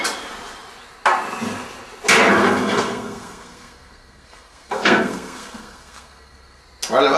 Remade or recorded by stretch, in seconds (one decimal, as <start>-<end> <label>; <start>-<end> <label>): 0.0-2.4 recorded; 2.4-6.6 remade; 6.6-7.2 recorded